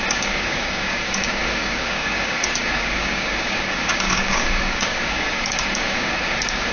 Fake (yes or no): yes